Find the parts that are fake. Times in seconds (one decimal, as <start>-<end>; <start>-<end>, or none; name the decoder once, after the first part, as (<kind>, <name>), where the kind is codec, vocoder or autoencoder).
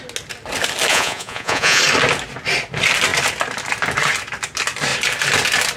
0.9-1.8 (vocoder, Vocos)